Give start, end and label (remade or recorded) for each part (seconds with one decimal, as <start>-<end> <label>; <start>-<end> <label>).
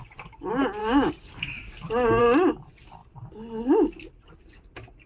0.0-0.8 recorded; 0.8-2.2 remade; 2.2-5.1 recorded